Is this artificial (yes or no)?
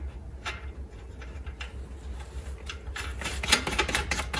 no